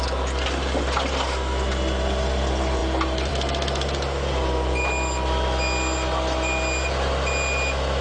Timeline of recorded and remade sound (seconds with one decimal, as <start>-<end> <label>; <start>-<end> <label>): 0.0-8.0 recorded